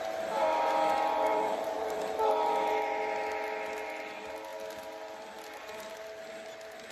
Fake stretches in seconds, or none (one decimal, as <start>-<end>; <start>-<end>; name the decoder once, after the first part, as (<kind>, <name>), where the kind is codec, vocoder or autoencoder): 1.3-2.0 (vocoder, BigVGAN v2)